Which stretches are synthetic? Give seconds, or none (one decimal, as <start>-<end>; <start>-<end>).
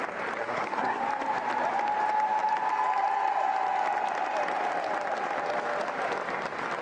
0.4-1.0